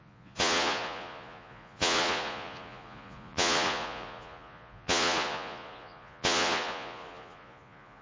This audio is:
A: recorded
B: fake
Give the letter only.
B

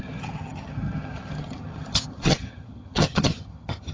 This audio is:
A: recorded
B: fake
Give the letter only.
B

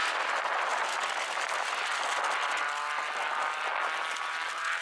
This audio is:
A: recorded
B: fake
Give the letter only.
A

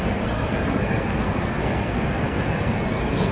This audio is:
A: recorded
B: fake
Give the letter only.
B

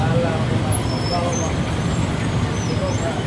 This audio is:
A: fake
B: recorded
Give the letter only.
B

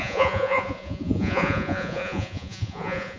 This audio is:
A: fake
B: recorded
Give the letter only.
A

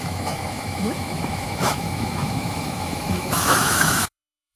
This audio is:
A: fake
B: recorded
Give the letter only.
A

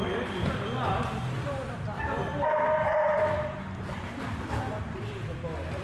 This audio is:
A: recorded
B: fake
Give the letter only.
A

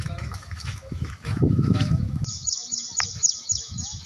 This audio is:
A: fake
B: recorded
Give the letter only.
A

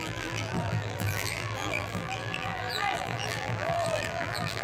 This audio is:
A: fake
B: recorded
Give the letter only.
A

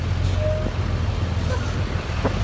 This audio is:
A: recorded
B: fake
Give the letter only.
A